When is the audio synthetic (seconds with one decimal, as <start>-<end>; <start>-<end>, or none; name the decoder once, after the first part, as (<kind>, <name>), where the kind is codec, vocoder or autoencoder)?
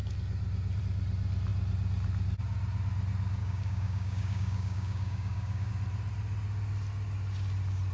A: 3.4-5.7 (codec, DAC)